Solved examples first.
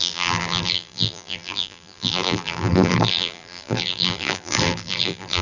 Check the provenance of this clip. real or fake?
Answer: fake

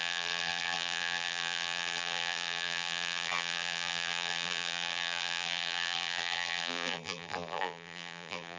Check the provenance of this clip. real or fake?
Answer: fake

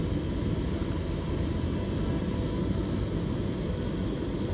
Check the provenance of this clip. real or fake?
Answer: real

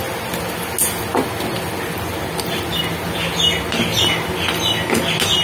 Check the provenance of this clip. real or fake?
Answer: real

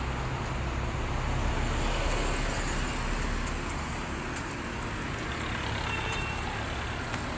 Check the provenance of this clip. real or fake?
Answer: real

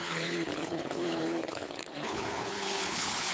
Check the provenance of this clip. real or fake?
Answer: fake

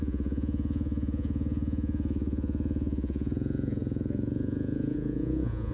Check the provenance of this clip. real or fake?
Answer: fake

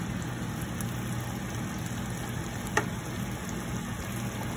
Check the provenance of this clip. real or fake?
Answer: real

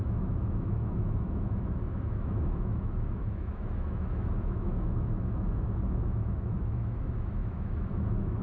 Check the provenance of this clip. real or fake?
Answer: fake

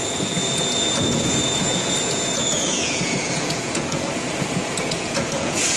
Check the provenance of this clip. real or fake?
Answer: fake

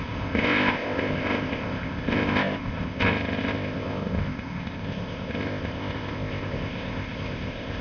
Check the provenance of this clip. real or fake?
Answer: fake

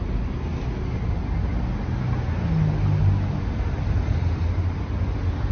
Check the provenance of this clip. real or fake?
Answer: real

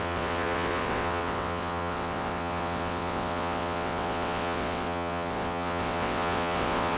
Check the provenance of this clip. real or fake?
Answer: fake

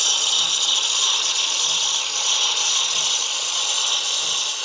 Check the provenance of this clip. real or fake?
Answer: real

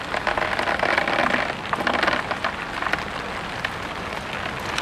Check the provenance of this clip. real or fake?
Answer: real